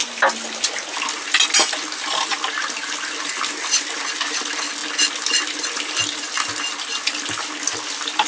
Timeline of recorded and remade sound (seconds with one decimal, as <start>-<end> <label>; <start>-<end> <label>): 0.0-8.3 recorded